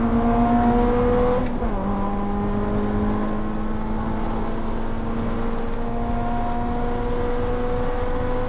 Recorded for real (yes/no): yes